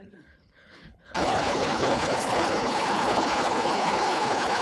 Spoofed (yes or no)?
yes